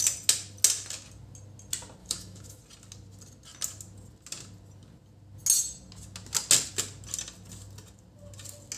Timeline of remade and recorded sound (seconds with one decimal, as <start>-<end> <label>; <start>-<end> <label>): 0.0-2.0 recorded; 2.0-2.6 remade; 2.6-8.8 recorded